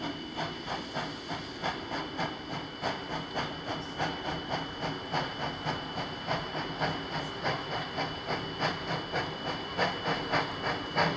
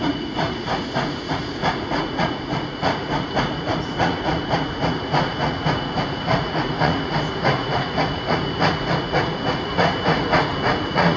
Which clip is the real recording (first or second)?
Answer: first